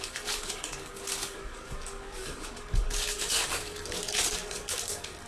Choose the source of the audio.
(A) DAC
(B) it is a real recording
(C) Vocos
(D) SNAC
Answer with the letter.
A